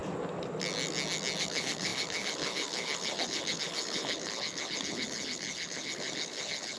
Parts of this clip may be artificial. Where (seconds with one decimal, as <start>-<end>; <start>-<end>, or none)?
1.4-6.8